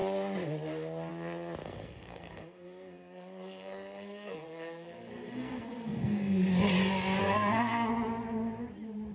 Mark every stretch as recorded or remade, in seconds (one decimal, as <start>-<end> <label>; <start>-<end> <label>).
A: 0.0-1.6 recorded; 1.6-6.5 remade; 6.5-7.2 recorded; 7.2-7.9 remade; 7.9-9.1 recorded